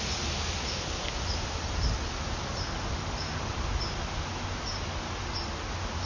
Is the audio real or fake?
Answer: real